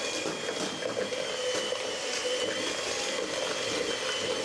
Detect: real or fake real